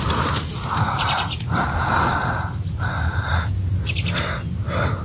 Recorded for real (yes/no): yes